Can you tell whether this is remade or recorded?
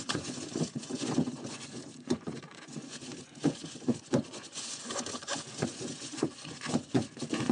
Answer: remade